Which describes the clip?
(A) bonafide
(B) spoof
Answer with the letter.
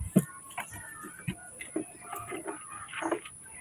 A